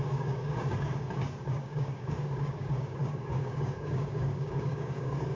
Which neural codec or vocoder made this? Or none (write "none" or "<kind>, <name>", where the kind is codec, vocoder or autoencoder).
codec, DAC